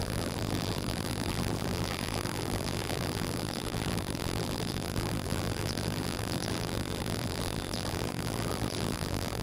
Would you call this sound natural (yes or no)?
no